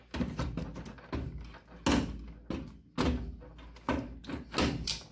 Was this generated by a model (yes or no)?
no